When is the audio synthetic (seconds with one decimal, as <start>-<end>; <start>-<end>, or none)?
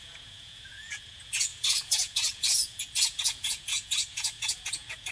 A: 0.0-5.1